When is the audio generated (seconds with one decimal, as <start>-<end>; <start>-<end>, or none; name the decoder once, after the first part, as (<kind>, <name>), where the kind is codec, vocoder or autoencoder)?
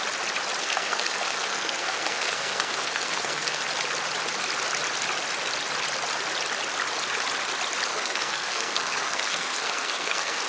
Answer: 0.6-3.6 (codec, SNAC); 7.9-10.5